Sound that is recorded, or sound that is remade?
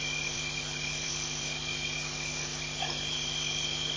remade